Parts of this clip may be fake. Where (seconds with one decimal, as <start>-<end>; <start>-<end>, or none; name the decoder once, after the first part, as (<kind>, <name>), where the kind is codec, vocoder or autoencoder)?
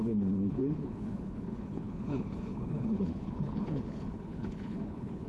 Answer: 0.0-5.3 (codec, HILCodec)